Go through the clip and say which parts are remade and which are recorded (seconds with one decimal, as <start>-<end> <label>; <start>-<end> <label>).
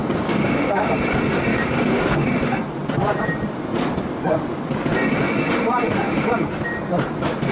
0.0-0.9 remade; 0.9-1.5 recorded; 1.5-2.3 remade; 2.3-7.5 recorded